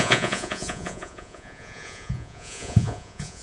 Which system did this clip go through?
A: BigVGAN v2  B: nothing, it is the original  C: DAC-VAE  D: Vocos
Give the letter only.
D